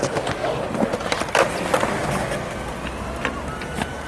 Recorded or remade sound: recorded